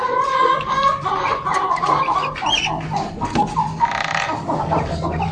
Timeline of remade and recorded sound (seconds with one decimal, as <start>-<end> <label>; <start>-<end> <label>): 0.0-5.3 recorded

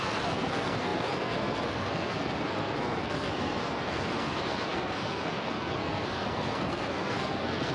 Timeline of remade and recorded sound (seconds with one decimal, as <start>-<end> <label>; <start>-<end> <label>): 0.0-7.7 remade

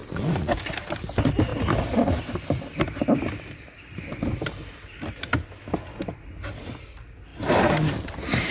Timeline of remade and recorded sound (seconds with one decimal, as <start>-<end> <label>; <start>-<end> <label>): 0.0-8.5 recorded

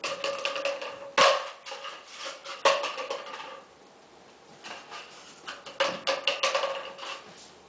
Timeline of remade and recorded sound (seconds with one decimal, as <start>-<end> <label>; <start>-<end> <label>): 0.0-7.7 recorded